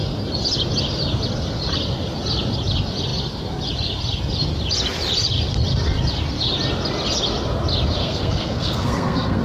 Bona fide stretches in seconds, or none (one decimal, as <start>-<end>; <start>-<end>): 0.0-8.0